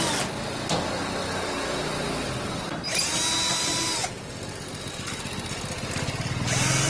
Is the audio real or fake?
real